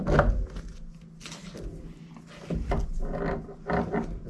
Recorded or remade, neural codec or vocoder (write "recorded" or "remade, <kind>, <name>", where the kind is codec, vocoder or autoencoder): recorded